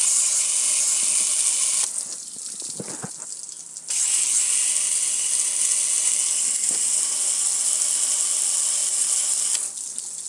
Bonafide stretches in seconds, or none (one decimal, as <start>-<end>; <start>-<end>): 0.0-10.3